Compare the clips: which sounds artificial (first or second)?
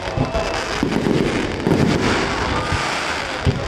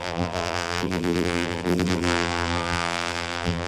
second